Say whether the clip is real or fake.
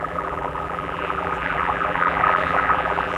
fake